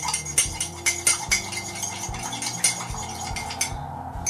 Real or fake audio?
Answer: real